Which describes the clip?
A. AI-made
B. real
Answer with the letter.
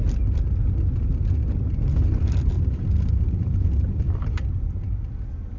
B